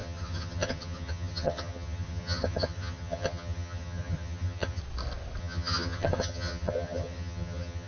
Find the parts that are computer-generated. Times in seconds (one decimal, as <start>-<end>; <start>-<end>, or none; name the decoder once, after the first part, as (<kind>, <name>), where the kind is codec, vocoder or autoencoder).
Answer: 0.0-4.8 (vocoder, HiFi-GAN); 5.4-7.9